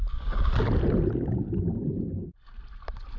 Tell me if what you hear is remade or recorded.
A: recorded